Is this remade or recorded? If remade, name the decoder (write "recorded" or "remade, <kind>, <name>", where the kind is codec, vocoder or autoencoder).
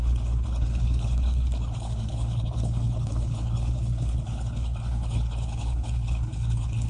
remade, codec, HILCodec